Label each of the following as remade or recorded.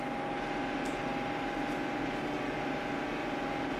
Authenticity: recorded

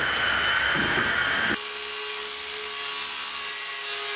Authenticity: recorded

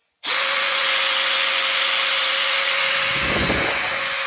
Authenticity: remade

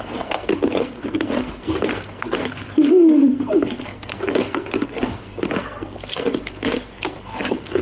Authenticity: remade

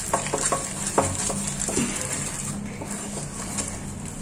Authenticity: recorded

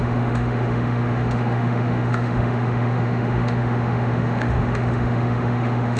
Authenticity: remade